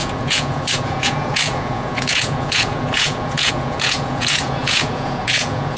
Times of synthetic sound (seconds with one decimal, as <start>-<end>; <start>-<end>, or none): 0.0-5.8